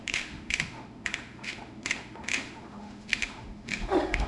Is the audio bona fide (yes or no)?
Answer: no